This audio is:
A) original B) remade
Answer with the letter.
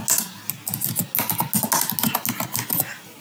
A